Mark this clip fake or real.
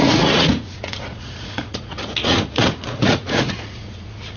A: fake